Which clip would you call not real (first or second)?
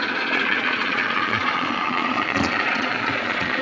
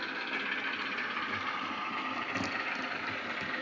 first